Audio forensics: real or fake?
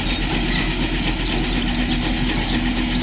real